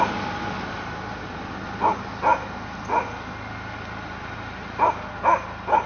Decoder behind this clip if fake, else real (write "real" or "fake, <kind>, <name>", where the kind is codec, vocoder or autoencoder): real